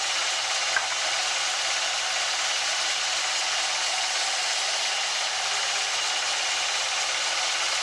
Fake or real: real